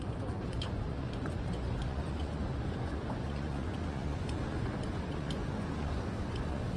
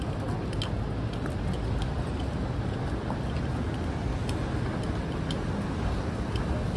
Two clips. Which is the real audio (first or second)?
second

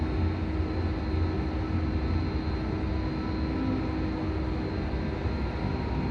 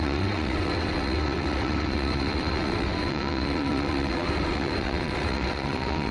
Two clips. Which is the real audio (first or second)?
first